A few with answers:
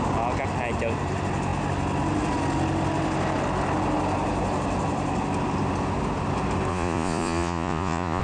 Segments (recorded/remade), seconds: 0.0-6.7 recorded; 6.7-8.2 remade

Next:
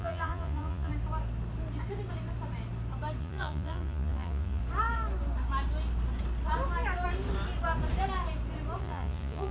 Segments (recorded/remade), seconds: 0.0-0.9 remade; 0.9-3.2 recorded; 3.2-4.6 remade; 4.6-8.8 recorded; 8.8-9.5 remade